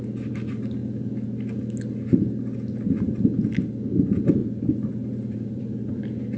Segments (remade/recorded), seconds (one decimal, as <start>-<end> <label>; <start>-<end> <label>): 0.0-4.4 recorded; 4.4-6.0 remade; 6.0-6.4 recorded